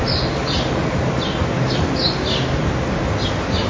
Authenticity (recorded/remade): recorded